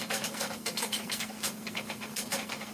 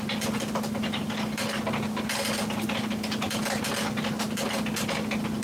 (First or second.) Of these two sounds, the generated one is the first